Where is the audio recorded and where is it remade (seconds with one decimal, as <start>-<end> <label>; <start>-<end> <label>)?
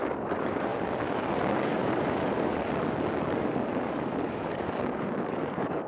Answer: 0.0-5.9 remade